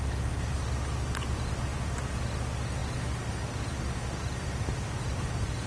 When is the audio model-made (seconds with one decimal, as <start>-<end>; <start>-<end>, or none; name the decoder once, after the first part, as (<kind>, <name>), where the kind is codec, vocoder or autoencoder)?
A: none